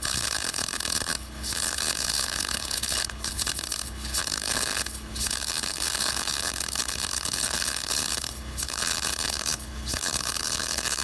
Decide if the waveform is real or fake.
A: fake